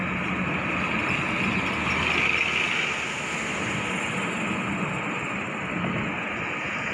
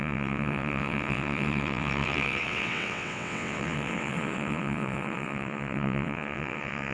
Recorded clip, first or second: first